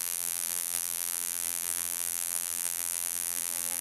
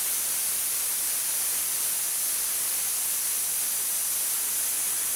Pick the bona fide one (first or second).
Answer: second